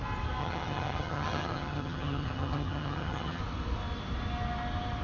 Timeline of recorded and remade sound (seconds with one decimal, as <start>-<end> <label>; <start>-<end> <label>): 0.0-0.4 recorded; 0.4-3.4 remade; 3.4-5.0 recorded